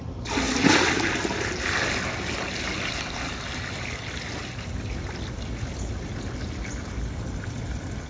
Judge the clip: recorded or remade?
recorded